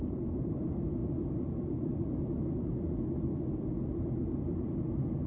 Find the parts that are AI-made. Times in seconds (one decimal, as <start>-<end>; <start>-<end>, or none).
0.0-1.0; 4.2-5.3